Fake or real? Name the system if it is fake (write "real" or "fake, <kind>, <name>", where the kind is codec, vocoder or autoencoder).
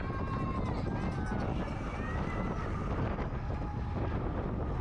real